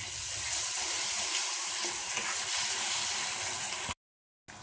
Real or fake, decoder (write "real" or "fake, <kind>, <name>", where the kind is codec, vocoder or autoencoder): real